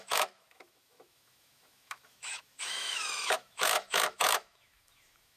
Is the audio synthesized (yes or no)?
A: yes